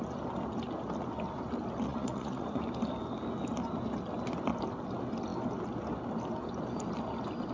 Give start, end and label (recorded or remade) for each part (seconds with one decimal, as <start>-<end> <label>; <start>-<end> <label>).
0.0-1.9 recorded; 1.9-2.6 remade; 2.6-7.5 recorded